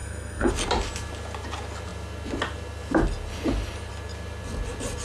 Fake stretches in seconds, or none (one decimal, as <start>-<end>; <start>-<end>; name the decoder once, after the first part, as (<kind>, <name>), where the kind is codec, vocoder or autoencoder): 0.0-0.5 (codec, SNAC)